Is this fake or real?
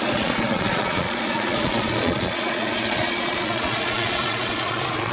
fake